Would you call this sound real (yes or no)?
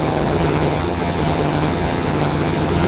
no